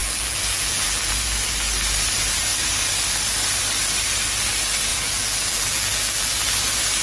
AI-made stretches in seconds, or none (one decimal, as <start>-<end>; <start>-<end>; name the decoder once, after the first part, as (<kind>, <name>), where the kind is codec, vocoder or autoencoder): 0.0-1.1 (vocoder, BigVGAN v2); 4.9-6.3